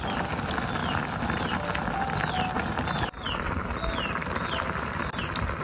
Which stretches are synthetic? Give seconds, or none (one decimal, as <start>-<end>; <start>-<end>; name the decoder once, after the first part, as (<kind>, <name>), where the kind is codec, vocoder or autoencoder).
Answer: none